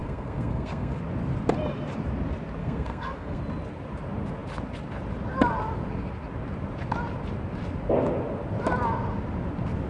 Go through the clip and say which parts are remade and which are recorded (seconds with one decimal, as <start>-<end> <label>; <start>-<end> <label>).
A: 0.0-1.0 remade; 1.0-2.6 recorded; 2.6-3.4 remade; 3.4-9.9 recorded